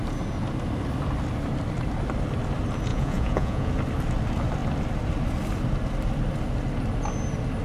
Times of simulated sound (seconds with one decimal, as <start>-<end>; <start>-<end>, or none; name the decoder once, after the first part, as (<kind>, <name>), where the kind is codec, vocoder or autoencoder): 2.9-3.7 (vocoder, Vocos)